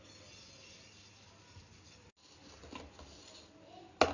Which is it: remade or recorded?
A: recorded